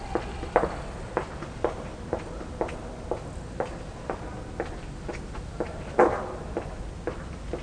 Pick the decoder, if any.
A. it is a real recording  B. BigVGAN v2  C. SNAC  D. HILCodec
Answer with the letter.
A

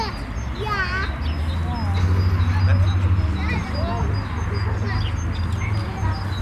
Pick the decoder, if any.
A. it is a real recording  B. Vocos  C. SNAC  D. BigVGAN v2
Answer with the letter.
A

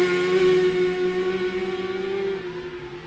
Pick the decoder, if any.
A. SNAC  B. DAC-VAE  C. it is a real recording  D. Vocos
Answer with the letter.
C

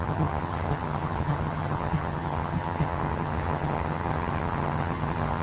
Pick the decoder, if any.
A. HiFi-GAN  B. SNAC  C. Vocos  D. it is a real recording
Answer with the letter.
A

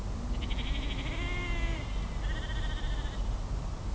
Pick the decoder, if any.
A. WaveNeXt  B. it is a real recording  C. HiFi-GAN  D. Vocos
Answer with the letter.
B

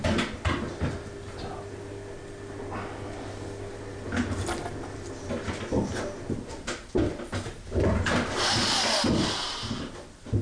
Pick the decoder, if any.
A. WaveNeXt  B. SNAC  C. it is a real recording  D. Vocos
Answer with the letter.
C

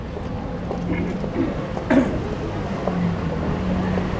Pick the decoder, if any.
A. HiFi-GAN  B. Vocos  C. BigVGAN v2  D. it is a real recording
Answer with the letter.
D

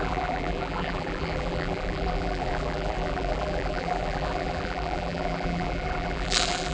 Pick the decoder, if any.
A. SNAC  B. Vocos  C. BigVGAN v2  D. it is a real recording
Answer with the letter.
C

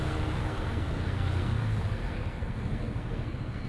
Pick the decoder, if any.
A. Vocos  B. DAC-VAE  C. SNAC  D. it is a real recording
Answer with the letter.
C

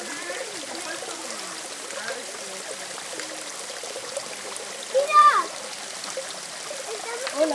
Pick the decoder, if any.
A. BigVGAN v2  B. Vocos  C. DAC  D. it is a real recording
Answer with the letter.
D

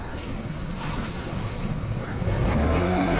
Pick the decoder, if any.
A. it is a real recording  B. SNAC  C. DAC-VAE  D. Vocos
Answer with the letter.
B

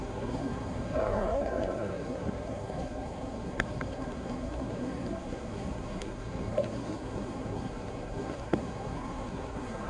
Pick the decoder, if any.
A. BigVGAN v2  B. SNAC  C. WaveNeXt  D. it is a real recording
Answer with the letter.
B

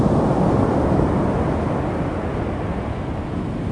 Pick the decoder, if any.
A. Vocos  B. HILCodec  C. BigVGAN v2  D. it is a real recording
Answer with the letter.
D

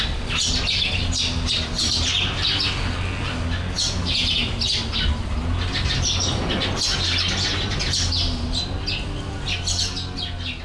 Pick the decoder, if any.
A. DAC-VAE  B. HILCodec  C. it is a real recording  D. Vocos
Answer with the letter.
C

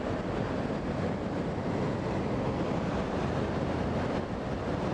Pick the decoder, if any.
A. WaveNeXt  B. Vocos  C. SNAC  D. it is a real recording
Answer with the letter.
D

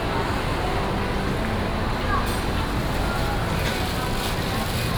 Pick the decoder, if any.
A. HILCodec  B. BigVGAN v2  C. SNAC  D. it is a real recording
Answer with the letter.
D